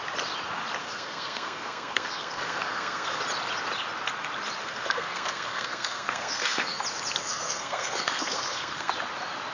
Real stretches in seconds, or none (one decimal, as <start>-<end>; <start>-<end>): 0.0-0.8; 3.2-4.6; 6.8-7.2; 8.9-9.5

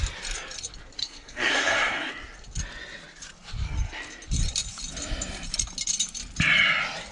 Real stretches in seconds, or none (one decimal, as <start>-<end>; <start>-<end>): 0.0-1.0; 2.1-7.1

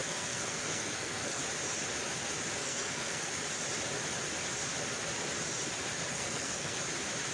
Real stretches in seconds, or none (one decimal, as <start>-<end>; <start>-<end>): 1.4-2.6; 3.3-6.1; 6.8-7.3

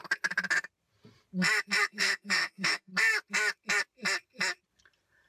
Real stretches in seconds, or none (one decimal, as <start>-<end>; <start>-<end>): 0.0-1.8; 2.9-5.3

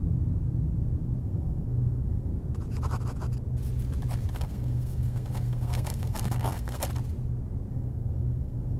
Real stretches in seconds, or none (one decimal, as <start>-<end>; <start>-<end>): 0.0-1.2; 2.3-4.3; 6.8-7.7

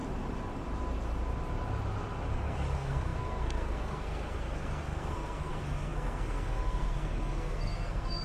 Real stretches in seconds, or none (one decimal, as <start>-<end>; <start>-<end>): 0.0-2.3

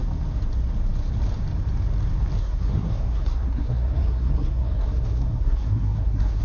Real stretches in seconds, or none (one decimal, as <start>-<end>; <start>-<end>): 0.0-2.4

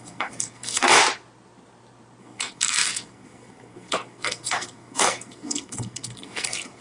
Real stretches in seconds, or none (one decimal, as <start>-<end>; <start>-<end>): 1.0-2.2